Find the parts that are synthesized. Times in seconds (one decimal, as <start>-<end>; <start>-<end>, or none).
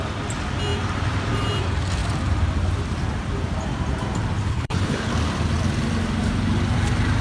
4.5-5.1